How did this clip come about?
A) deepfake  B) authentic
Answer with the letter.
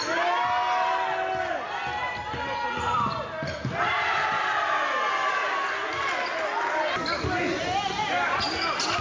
B